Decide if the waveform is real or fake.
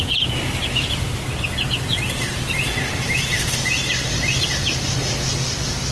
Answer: real